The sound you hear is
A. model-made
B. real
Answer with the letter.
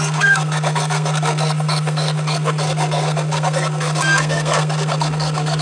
A